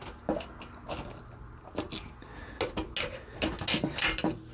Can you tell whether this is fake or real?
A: real